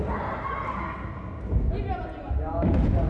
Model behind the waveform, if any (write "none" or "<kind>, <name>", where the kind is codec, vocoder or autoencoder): none